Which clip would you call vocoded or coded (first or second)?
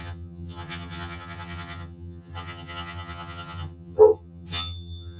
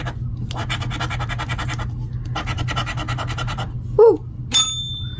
first